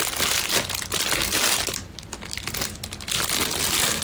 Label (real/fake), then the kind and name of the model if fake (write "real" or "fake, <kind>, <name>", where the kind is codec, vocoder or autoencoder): real